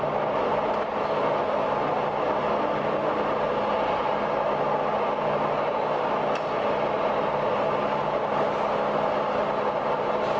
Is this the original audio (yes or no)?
yes